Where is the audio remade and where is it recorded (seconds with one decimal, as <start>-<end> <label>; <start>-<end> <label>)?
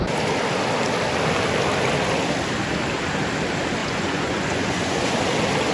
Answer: 0.0-3.8 recorded; 3.8-5.2 remade; 5.2-5.7 recorded